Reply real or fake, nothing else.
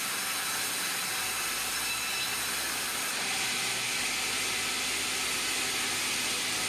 real